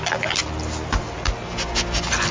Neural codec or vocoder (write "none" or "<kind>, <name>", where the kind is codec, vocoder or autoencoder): none